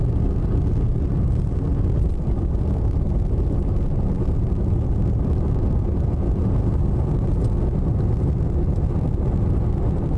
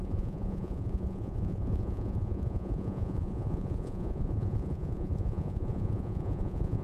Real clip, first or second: first